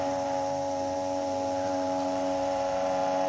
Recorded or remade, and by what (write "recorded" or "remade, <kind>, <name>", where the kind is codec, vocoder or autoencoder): remade, vocoder, BigVGAN v2